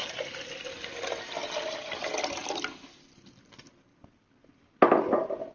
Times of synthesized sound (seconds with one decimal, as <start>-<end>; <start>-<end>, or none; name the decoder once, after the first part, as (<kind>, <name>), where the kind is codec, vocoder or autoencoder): none